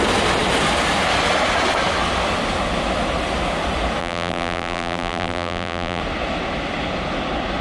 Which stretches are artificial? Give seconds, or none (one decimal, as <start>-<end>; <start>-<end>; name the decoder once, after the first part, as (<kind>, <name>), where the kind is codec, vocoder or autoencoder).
4.0-6.0 (vocoder, BigVGAN v2)